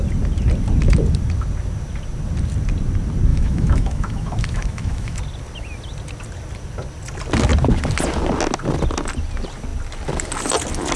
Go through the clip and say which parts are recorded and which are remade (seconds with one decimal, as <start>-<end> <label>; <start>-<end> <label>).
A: 0.0-3.3 recorded; 3.3-5.2 remade; 5.2-11.0 recorded